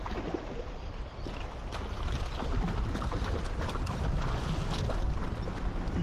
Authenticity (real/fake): real